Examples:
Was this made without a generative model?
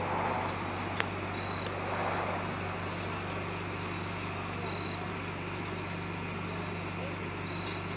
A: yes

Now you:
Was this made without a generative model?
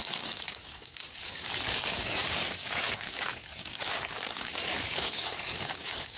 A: no